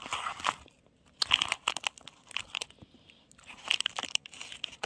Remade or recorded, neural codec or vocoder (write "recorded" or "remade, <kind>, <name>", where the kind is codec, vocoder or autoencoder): recorded